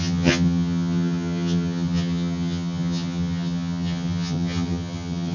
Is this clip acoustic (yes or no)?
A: no